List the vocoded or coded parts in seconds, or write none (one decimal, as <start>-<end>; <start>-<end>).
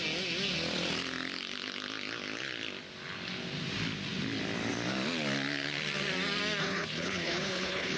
6.6-8.0